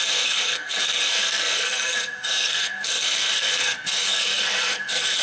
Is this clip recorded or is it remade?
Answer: remade